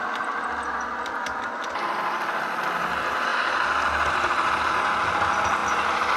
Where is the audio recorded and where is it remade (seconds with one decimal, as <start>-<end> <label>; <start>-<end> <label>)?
0.0-6.2 recorded

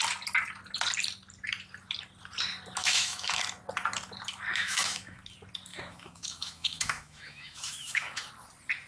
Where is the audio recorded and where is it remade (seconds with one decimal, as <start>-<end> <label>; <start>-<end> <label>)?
0.0-2.8 recorded; 2.8-3.4 remade; 3.4-4.5 recorded; 4.5-5.2 remade; 5.2-5.7 recorded; 5.7-8.3 remade; 8.3-8.9 recorded

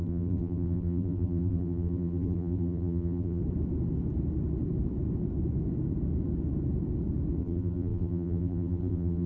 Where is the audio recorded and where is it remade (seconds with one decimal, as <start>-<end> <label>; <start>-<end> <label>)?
0.0-3.4 remade; 3.4-7.4 recorded; 7.4-9.3 remade

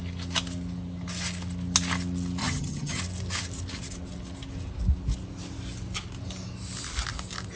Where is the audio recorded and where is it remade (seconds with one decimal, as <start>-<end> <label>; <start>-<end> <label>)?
0.0-2.4 recorded; 2.4-3.0 remade; 3.0-7.6 recorded

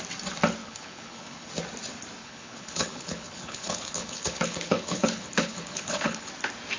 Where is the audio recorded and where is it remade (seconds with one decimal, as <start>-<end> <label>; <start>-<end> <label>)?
0.0-0.6 recorded; 0.6-1.5 remade; 1.5-2.2 recorded; 2.2-6.3 remade; 6.3-6.8 recorded

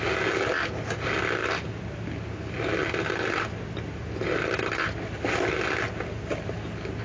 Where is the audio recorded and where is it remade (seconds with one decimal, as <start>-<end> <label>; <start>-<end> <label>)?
0.0-7.0 recorded

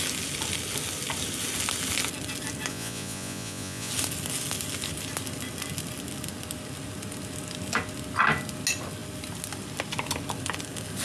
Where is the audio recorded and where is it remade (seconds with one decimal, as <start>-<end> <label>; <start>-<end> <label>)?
0.0-2.7 recorded; 2.7-3.9 remade; 3.9-11.0 recorded

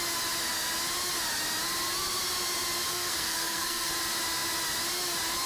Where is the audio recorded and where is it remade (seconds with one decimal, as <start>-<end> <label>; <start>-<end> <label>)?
0.0-2.9 recorded; 2.9-3.9 remade; 3.9-5.5 recorded